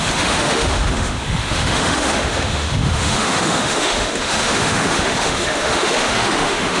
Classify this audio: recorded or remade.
remade